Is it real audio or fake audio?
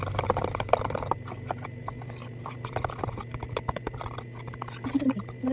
real